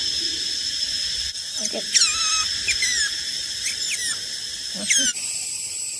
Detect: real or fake real